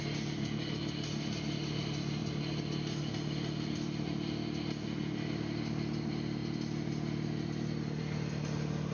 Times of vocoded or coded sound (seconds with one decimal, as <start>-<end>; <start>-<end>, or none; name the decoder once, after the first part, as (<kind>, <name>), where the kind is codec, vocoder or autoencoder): none